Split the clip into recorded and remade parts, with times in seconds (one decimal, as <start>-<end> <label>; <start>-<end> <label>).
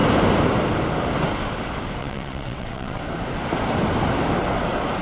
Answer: 0.0-2.0 recorded; 2.0-3.0 remade; 3.0-5.0 recorded